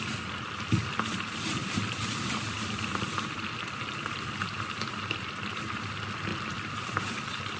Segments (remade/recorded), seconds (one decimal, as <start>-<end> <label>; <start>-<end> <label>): 0.0-1.6 recorded; 1.6-4.6 remade; 4.6-6.3 recorded; 6.3-7.0 remade; 7.0-7.6 recorded